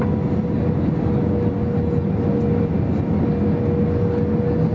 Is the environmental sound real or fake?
real